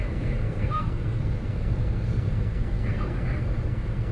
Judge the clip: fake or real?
fake